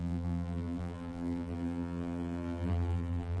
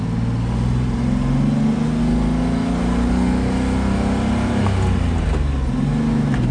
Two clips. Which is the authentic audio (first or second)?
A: second